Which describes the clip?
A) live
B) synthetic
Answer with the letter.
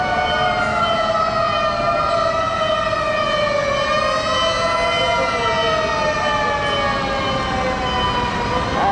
A